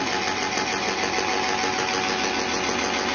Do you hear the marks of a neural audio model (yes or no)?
no